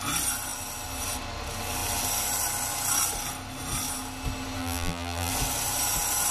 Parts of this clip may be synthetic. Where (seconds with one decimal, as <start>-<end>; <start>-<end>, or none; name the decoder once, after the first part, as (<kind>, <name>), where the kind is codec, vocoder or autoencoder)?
4.6-5.3 (vocoder, BigVGAN v2)